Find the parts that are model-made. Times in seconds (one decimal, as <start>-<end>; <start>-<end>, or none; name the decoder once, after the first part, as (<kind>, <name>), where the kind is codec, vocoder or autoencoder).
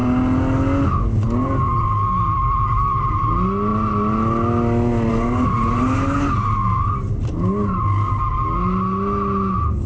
none